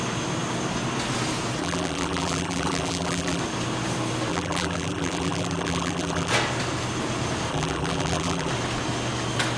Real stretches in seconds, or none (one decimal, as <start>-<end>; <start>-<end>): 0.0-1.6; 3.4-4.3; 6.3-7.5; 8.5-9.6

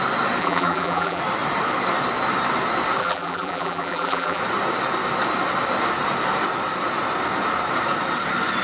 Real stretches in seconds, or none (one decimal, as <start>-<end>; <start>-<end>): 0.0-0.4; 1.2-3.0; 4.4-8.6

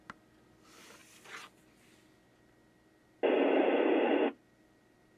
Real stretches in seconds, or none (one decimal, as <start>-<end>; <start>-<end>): 0.0-5.2

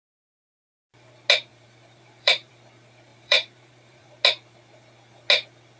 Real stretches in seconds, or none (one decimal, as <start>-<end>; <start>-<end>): 0.0-1.5; 2.5-3.1; 4.1-5.8